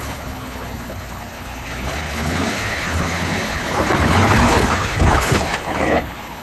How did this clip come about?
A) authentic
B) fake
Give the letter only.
B